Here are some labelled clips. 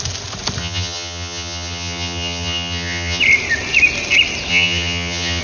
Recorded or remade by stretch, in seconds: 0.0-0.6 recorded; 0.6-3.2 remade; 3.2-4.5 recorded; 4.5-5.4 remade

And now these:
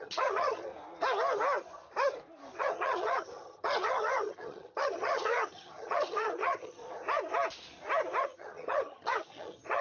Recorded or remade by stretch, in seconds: 0.0-0.7 remade; 0.7-2.6 recorded; 2.6-6.8 remade; 6.8-8.2 recorded; 8.2-9.8 remade

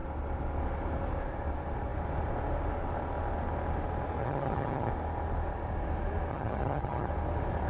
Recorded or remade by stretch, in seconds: 0.0-4.2 recorded; 4.2-4.9 remade; 4.9-6.3 recorded; 6.3-7.1 remade; 7.1-7.7 recorded

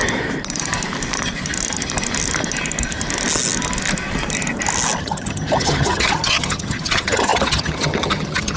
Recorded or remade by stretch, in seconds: 0.0-5.0 recorded; 5.0-8.6 remade